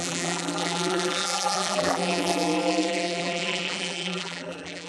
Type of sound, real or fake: fake